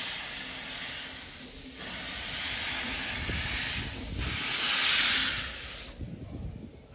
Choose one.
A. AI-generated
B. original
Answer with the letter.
B